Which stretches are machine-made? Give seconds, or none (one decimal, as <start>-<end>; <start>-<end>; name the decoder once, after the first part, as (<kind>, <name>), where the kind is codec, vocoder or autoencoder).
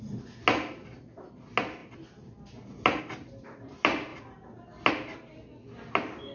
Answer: none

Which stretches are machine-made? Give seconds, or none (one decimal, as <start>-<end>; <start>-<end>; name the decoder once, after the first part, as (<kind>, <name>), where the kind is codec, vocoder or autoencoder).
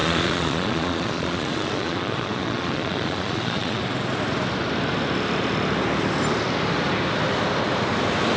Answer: 0.0-3.8 (vocoder, Vocos)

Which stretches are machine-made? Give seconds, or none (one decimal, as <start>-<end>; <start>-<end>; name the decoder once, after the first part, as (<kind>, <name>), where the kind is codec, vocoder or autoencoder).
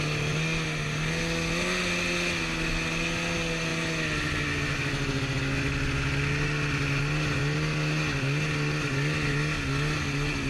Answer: none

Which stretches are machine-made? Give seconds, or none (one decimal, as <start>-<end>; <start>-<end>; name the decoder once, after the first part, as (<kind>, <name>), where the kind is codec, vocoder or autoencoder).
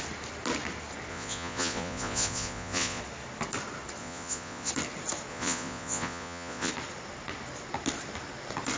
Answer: 1.1-3.0 (vocoder, Vocos); 4.0-4.7; 5.3-6.7